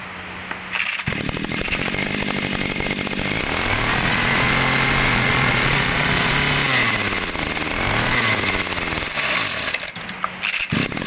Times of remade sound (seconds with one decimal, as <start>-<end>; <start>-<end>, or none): 3.9-4.5; 5.1-6.3